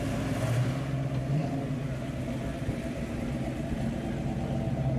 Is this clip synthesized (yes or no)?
no